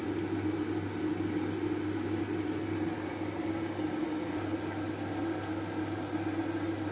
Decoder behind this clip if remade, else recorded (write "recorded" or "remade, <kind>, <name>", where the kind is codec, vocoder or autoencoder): recorded